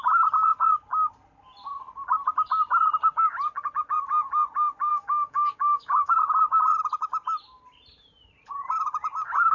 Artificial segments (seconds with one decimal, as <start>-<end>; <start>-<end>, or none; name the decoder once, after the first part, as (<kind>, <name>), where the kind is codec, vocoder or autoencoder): 4.9-6.1 (autoencoder, DAC-VAE)